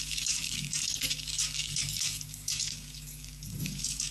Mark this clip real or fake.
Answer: fake